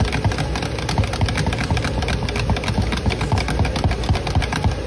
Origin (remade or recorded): recorded